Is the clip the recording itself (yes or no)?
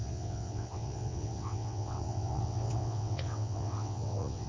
no